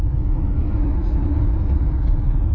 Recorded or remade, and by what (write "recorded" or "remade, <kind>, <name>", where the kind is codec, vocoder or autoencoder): recorded